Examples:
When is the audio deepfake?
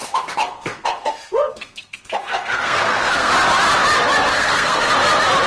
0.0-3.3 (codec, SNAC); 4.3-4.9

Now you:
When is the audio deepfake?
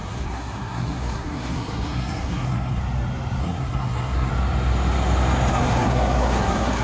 0.0-2.8 (codec, SNAC); 3.4-4.3; 5.5-6.8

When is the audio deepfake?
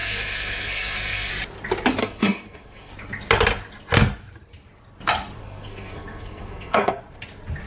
0.0-1.3 (codec, SNAC); 2.0-2.9; 5.4-7.0